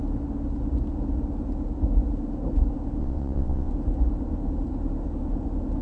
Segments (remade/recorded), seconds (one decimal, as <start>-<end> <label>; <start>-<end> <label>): 0.0-3.0 recorded; 3.0-3.7 remade; 3.7-5.8 recorded